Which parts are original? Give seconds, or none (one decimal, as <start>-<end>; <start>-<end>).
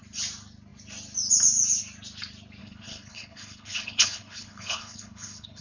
0.0-2.6